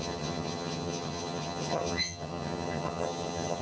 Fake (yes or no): yes